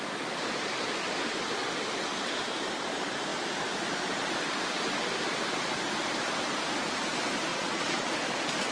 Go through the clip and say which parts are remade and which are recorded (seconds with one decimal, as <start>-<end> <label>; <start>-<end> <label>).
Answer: 0.0-7.5 recorded; 7.5-8.1 remade; 8.1-8.7 recorded